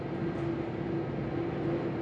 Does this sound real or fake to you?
real